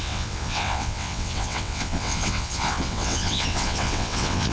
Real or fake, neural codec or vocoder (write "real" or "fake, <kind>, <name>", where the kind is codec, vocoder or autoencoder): fake, vocoder, WaveNeXt